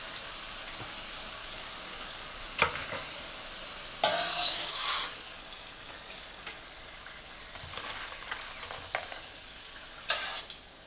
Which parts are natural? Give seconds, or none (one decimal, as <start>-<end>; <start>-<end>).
0.0-1.4; 3.4-4.3; 8.3-9.1; 9.7-10.9